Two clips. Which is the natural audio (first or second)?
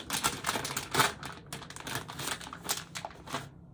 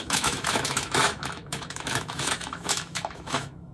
first